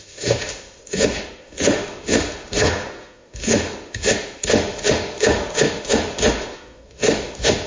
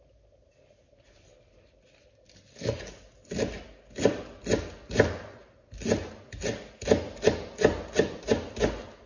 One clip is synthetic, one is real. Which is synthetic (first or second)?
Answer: first